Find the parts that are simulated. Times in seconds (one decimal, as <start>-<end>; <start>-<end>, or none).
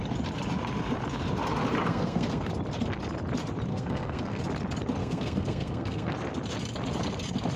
1.9-2.5; 3.7-4.4; 5.0-6.1